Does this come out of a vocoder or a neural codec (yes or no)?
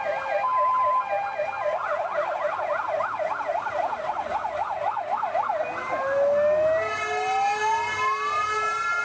no